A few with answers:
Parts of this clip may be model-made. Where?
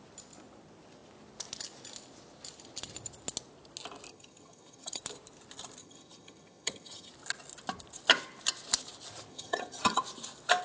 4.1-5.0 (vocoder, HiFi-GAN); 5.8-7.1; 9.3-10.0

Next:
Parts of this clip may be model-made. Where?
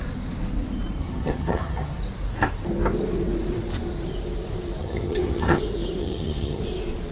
1.0-2.0 (vocoder, HiFi-GAN); 4.8-5.6; 6.0-6.6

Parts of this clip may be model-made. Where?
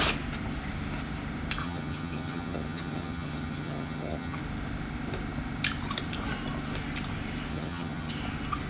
1.6-4.4 (vocoder, HiFi-GAN); 7.5-8.1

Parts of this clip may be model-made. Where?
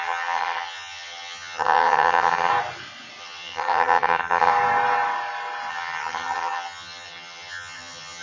0.0-2.5 (vocoder, HiFi-GAN); 3.2-4.5; 5.7-8.2